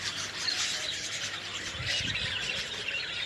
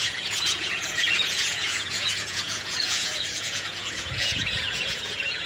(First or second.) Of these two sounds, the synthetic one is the second